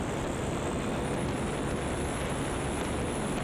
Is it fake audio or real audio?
real